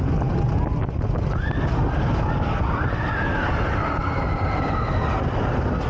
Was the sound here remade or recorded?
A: recorded